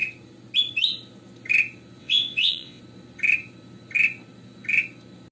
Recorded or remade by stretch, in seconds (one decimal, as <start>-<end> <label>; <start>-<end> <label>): 0.0-2.0 recorded; 2.0-2.8 remade; 2.8-5.3 recorded